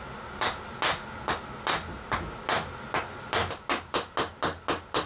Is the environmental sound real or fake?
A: real